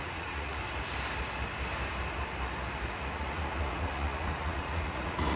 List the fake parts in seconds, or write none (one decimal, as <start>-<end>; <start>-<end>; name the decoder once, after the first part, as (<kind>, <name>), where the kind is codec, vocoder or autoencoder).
0.0-0.6 (vocoder, Vocos); 3.0-5.4